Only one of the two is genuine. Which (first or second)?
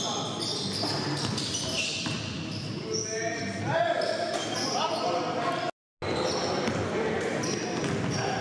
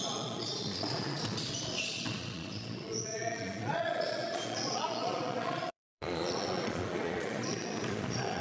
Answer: first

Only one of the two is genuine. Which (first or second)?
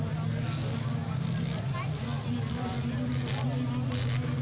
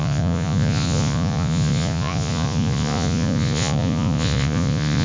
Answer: first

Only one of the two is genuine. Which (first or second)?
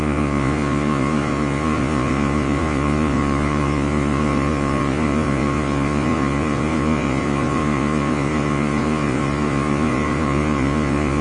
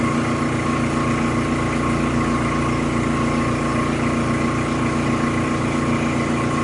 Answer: second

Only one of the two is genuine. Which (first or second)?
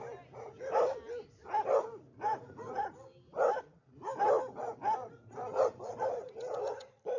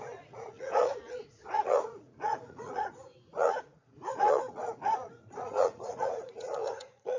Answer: first